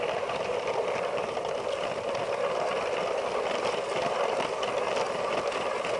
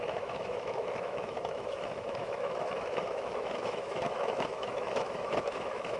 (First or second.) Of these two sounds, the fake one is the second